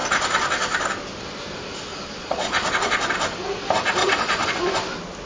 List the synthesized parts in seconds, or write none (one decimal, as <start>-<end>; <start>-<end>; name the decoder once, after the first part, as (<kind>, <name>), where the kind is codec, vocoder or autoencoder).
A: 1.9-2.7 (vocoder, Vocos); 4.0-4.5